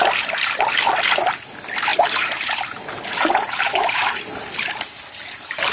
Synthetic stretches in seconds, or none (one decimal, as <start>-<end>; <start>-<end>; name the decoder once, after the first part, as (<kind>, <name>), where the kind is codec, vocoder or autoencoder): 1.9-4.8 (vocoder, BigVGAN v2)